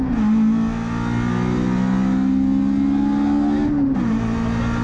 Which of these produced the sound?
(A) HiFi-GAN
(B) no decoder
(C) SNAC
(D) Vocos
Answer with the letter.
B